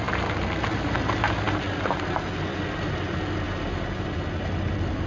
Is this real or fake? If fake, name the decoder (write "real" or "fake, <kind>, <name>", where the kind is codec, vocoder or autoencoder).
real